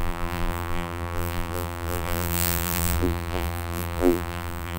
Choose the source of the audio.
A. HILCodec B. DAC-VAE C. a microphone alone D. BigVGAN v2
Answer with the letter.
D